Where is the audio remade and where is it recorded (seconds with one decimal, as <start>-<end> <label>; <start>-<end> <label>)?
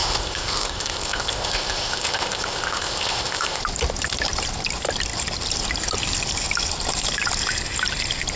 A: 0.0-3.6 remade; 3.6-8.4 recorded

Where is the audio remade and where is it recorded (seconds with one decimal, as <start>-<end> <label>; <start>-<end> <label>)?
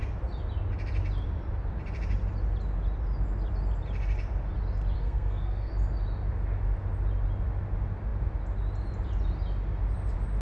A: 0.0-5.0 recorded; 5.0-5.7 remade; 5.7-10.4 recorded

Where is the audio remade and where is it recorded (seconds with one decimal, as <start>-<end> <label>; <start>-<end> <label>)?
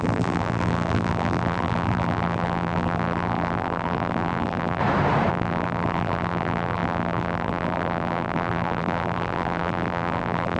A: 0.0-4.8 remade; 4.8-5.3 recorded; 5.3-10.6 remade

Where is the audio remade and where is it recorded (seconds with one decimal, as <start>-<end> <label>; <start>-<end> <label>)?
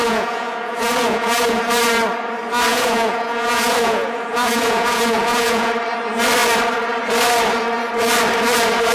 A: 0.0-1.6 remade; 1.6-2.7 recorded; 2.7-5.7 remade; 5.7-8.9 recorded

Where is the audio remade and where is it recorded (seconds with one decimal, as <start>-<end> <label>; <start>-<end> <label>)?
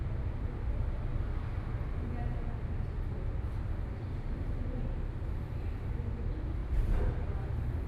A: 0.0-6.6 recorded; 6.6-7.3 remade; 7.3-7.9 recorded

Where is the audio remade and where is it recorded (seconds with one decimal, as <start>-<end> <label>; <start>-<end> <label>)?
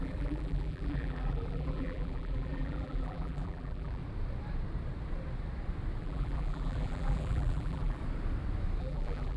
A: 0.0-4.0 remade; 4.0-6.0 recorded; 6.0-8.0 remade; 8.0-8.8 recorded; 8.8-9.4 remade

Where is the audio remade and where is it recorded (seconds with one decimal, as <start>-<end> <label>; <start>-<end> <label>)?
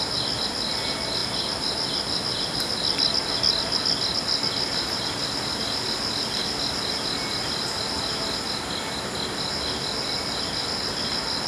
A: 0.0-11.5 recorded